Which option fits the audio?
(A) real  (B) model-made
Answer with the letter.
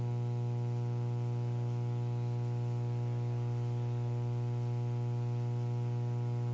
A